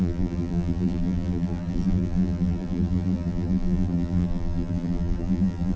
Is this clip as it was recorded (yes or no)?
no